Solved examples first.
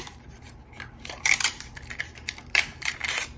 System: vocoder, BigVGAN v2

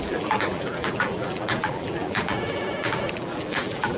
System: vocoder, BigVGAN v2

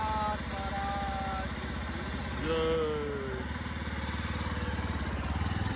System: none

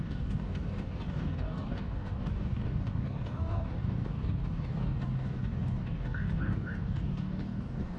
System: codec, DAC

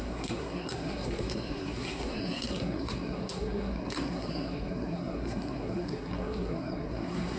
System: codec, SNAC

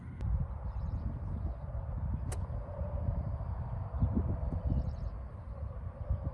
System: none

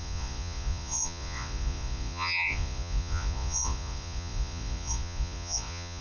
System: vocoder, Vocos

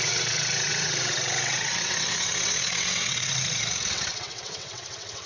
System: vocoder, WaveNeXt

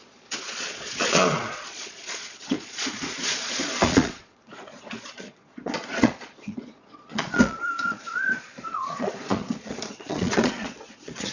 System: vocoder, Vocos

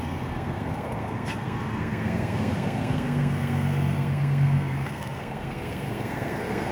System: codec, SNAC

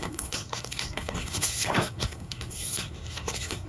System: codec, SNAC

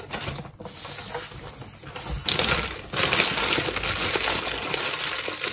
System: none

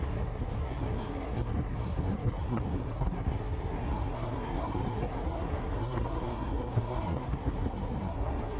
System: codec, SNAC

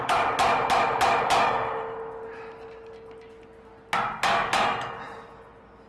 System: none